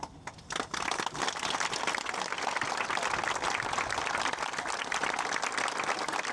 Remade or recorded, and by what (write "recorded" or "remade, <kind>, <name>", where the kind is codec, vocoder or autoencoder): recorded